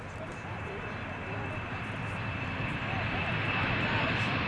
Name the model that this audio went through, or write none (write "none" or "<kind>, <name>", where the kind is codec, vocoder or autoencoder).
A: none